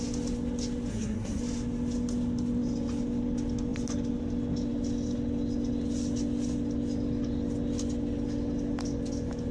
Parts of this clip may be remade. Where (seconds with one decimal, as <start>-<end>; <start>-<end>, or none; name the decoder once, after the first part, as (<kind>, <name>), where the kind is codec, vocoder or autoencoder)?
0.9-1.4 (codec, SNAC)